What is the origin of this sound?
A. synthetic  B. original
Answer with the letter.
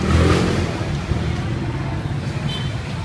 B